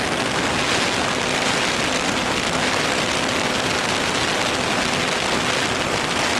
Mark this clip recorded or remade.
recorded